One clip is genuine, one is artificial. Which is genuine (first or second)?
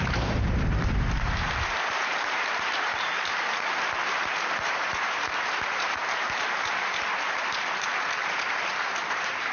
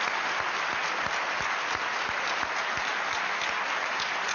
second